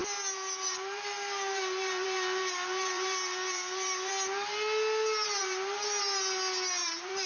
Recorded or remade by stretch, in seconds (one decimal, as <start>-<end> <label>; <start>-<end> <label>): 0.0-4.1 remade; 4.1-5.4 recorded; 5.4-6.0 remade; 6.0-6.8 recorded; 6.8-7.3 remade